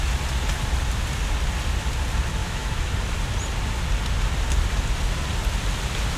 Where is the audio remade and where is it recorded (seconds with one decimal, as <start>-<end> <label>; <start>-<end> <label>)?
0.0-2.4 recorded; 2.4-2.9 remade; 2.9-6.2 recorded